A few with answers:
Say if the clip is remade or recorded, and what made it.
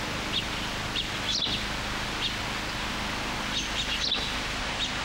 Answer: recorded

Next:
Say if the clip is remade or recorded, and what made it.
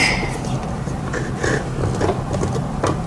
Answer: recorded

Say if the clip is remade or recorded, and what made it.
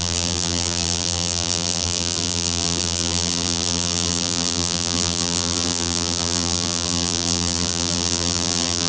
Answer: remade, vocoder, BigVGAN v2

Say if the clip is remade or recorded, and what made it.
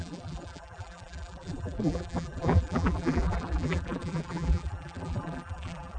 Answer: remade, vocoder, BigVGAN v2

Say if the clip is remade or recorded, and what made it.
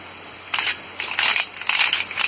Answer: remade, vocoder, BigVGAN v2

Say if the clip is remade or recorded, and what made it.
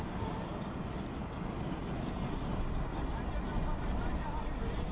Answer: recorded